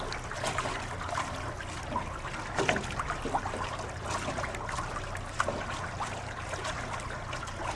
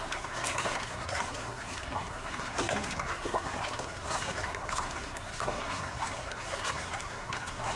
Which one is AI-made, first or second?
second